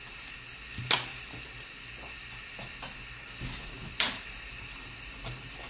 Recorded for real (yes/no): yes